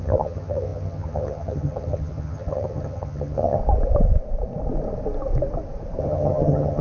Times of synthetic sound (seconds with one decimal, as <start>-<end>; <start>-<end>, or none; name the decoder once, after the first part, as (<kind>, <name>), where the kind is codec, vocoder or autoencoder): 0.0-3.6 (vocoder, HiFi-GAN); 6.0-6.8

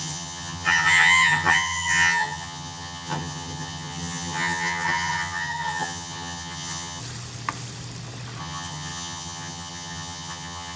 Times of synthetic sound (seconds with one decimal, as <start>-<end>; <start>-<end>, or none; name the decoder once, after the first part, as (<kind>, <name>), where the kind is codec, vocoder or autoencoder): 0.0-7.0 (vocoder, HiFi-GAN); 8.4-10.8

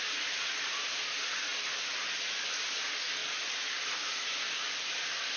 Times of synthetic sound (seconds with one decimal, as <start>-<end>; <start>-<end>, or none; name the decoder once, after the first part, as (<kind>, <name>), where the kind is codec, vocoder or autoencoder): none

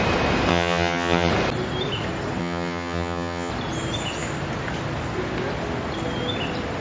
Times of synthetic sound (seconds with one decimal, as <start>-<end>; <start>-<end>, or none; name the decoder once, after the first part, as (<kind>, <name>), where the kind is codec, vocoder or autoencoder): 0.5-1.3 (vocoder, HiFi-GAN); 2.4-3.5

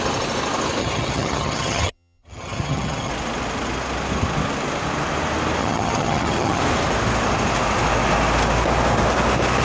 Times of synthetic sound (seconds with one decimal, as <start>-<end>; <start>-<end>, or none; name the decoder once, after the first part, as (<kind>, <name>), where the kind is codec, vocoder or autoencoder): 0.8-3.1 (vocoder, HiFi-GAN); 5.6-6.6

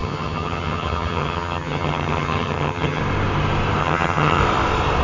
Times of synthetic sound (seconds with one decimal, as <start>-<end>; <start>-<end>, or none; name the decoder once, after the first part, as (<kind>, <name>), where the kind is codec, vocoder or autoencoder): 0.0-3.0 (vocoder, HiFi-GAN); 3.8-4.4

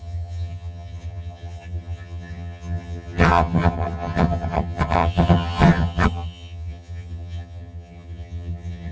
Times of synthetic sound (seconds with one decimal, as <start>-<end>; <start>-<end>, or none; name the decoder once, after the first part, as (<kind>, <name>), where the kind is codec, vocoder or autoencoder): 0.0-8.9 (vocoder, HiFi-GAN)

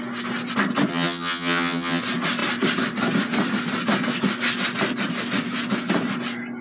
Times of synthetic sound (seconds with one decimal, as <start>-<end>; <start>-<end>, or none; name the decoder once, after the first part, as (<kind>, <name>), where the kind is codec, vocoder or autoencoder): 0.9-2.0 (vocoder, HiFi-GAN)